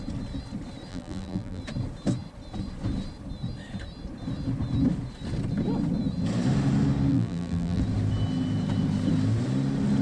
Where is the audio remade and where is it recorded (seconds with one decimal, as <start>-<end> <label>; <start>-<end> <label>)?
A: 0.0-0.9 recorded; 0.9-1.6 remade; 1.6-7.1 recorded; 7.1-7.8 remade; 7.8-10.0 recorded